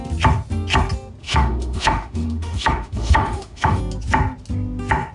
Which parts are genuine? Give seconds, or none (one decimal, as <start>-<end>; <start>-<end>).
0.0-1.2; 3.8-5.1